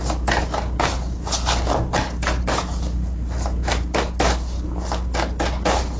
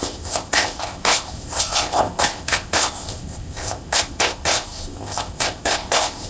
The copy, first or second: second